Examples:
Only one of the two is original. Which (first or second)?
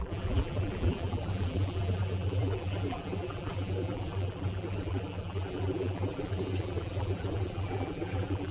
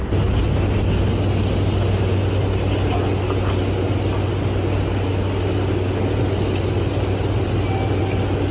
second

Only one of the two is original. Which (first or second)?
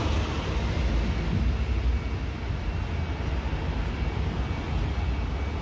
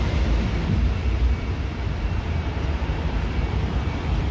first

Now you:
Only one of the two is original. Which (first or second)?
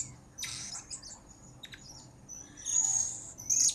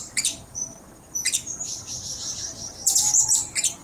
first